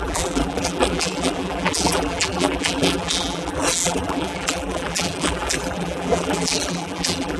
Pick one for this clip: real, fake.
fake